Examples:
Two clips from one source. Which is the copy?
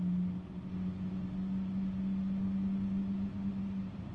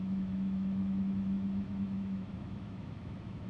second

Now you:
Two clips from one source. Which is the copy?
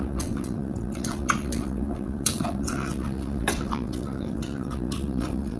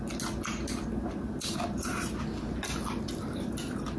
first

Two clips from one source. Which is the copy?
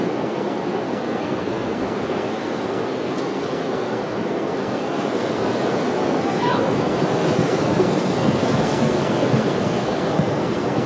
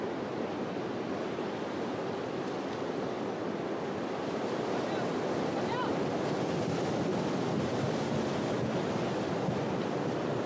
first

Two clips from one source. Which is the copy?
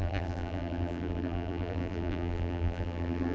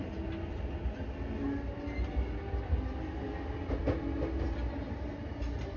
first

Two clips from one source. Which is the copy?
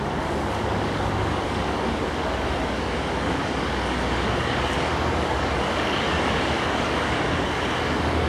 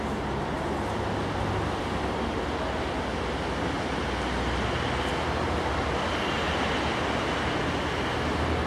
first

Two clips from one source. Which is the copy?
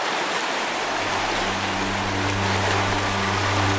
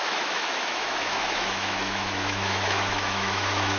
second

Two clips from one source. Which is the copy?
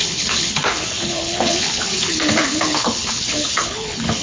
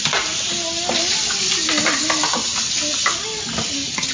first